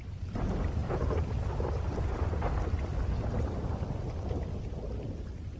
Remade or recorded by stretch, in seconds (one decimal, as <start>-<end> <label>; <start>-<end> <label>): 0.0-5.6 recorded